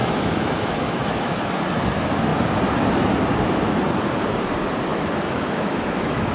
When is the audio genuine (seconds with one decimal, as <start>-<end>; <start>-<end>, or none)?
1.5-4.9